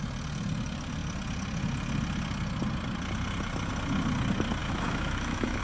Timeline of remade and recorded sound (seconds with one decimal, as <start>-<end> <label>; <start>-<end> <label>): 0.0-4.6 recorded; 4.6-5.6 remade